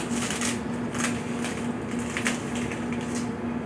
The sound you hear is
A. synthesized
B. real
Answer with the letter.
B